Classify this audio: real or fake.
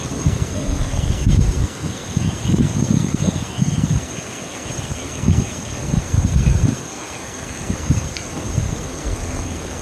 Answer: fake